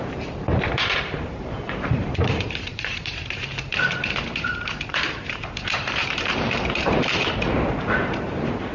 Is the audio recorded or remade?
remade